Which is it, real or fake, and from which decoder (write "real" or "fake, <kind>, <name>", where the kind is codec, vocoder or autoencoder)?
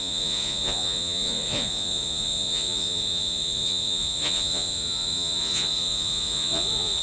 fake, vocoder, Vocos